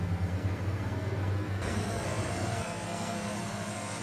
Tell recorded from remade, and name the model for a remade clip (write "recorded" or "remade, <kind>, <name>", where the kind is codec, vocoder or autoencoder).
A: remade, codec, SNAC